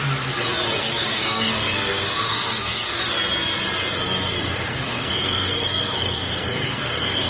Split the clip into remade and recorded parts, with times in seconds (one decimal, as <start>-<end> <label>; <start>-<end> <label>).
0.0-0.8 recorded; 0.8-3.0 remade; 3.0-4.4 recorded; 4.4-7.3 remade

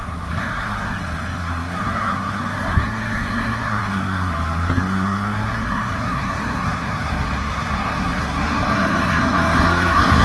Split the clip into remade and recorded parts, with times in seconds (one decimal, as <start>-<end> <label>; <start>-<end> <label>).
0.0-10.2 remade

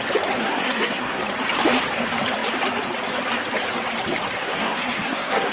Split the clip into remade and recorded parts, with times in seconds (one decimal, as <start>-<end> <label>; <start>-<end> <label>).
0.0-0.4 recorded; 0.4-1.2 remade; 1.2-4.4 recorded; 4.4-5.5 remade

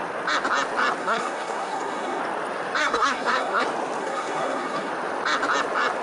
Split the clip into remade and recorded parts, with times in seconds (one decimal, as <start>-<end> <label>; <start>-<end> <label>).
0.0-1.0 recorded; 1.0-2.2 remade; 2.2-2.8 recorded; 2.8-3.6 remade; 3.6-4.0 recorded; 4.0-4.9 remade; 4.9-6.0 recorded

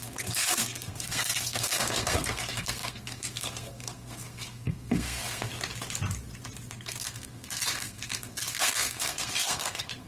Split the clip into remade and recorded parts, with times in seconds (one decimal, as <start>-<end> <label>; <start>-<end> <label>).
0.0-5.5 remade; 5.5-6.7 recorded; 6.7-10.1 remade

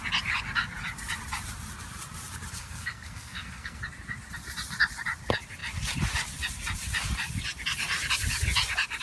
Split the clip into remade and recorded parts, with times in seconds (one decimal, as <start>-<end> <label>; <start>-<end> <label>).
0.0-2.6 recorded; 2.6-3.8 remade; 3.8-9.0 recorded

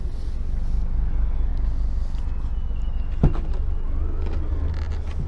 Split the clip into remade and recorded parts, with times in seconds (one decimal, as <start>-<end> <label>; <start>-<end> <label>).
0.0-5.3 recorded

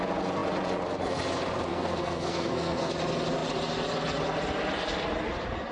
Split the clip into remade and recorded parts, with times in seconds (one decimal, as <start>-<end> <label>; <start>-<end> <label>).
0.0-1.7 recorded; 1.7-2.9 remade; 2.9-5.7 recorded